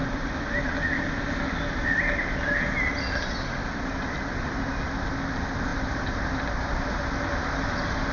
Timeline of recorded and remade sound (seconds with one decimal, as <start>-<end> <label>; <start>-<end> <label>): 0.0-5.7 recorded; 5.7-6.9 remade; 6.9-8.1 recorded